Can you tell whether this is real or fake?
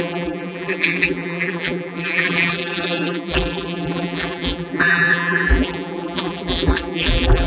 fake